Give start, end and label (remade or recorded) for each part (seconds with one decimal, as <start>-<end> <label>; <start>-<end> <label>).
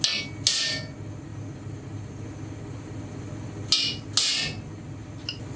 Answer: 0.0-5.6 recorded